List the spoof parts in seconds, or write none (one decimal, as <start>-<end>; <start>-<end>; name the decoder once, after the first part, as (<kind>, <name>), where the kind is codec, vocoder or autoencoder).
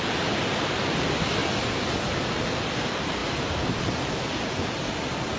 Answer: none